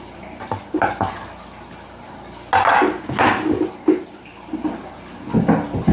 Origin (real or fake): real